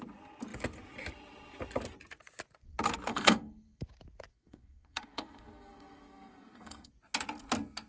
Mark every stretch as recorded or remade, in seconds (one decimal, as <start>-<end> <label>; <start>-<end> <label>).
0.0-3.1 recorded; 3.1-3.8 remade; 3.8-4.3 recorded; 4.3-6.9 remade; 6.9-7.9 recorded